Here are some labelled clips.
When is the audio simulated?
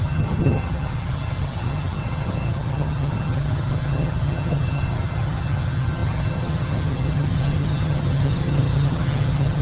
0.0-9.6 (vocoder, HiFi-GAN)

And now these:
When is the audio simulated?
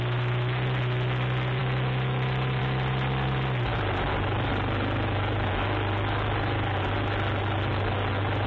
none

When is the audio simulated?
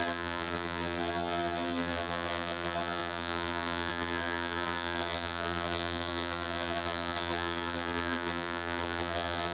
0.0-9.5 (vocoder, BigVGAN v2)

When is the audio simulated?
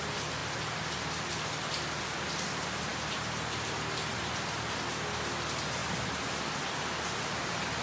none